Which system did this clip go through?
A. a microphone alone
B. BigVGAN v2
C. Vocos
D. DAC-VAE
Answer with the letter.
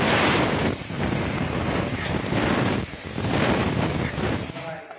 B